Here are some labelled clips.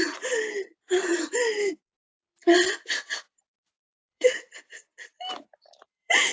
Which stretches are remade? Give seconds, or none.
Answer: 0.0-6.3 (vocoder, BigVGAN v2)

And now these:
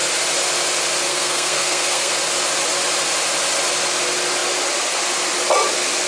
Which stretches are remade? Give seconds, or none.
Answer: 1.1-2.1 (codec, SNAC)

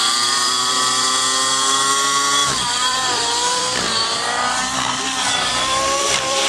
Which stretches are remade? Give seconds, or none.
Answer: 0.0-0.8 (vocoder, BigVGAN v2); 2.4-6.5